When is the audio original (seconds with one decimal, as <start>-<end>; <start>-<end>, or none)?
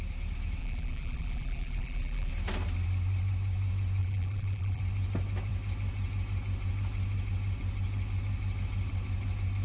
0.0-0.6; 2.3-4.0; 4.8-9.6